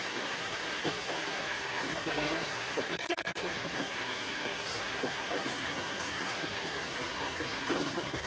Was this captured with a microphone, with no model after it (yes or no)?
no